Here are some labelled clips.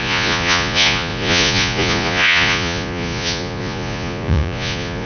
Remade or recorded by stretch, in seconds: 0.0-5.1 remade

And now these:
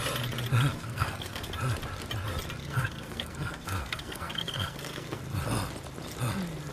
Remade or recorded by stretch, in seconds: 0.0-0.7 recorded; 0.7-1.5 remade; 1.5-2.6 recorded; 2.6-5.2 remade; 5.2-6.7 recorded

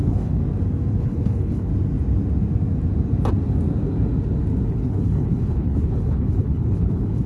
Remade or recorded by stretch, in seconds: 0.0-0.4 remade; 0.4-1.0 recorded; 1.0-1.7 remade; 1.7-4.7 recorded; 4.7-7.3 remade

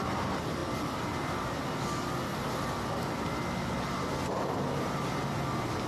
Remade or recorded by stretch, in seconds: 0.0-0.6 remade; 0.6-4.1 recorded; 4.1-5.9 remade

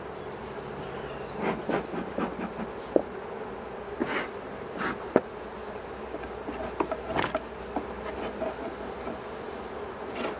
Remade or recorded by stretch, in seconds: 0.0-10.4 recorded

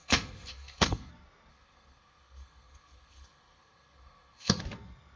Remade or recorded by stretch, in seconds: 0.0-1.1 remade; 1.1-1.5 recorded; 1.5-4.6 remade; 4.6-5.2 recorded

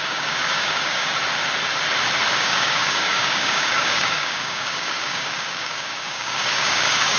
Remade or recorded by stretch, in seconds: 0.0-1.1 remade; 1.1-2.3 recorded; 2.3-7.2 remade

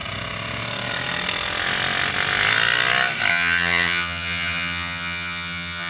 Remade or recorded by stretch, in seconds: 0.0-3.3 recorded; 3.3-5.9 remade